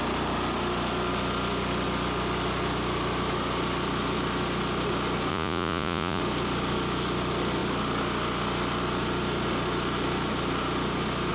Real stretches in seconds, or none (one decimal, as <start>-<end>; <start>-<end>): 0.0-5.3; 6.2-11.3